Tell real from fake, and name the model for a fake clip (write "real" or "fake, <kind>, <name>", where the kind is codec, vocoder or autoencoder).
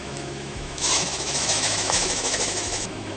fake, autoencoder, DAC-VAE